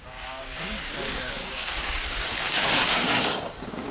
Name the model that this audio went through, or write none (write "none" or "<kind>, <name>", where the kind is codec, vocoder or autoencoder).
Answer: codec, DAC